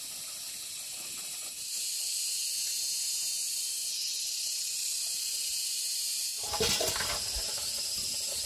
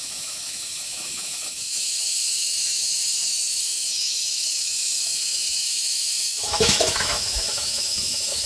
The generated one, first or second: second